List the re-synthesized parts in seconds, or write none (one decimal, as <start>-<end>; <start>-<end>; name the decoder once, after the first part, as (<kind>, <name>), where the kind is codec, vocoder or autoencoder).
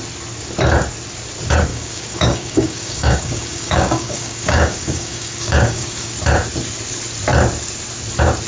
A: 1.7-6.1 (codec, DAC)